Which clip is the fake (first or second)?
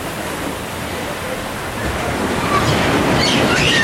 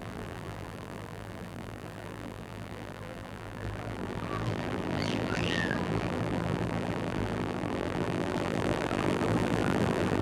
second